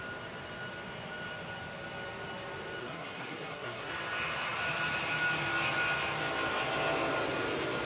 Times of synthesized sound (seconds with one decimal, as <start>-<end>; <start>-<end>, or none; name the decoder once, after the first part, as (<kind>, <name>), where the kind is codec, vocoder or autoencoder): 2.8-3.9 (codec, SNAC)

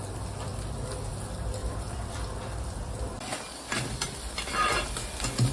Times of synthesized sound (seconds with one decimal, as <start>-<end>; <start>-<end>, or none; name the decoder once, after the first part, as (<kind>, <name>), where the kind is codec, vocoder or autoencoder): 1.6-4.9 (vocoder, BigVGAN v2)

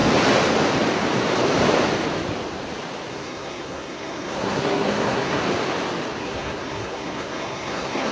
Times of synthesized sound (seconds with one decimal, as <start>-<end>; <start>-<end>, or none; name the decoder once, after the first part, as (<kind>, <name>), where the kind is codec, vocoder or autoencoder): 3.1-5.4 (codec, SNAC); 6.2-8.1

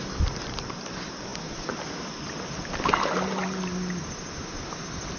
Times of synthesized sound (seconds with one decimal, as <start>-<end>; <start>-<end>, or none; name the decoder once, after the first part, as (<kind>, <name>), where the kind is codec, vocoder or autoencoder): none

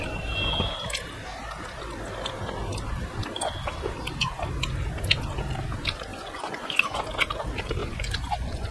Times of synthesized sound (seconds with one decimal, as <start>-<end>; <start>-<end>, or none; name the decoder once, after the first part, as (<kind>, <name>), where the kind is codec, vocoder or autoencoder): 6.1-7.0 (vocoder, Vocos); 7.8-8.7